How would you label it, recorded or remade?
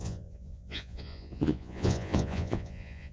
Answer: remade